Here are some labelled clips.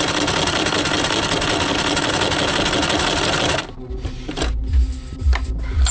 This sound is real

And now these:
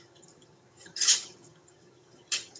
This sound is fake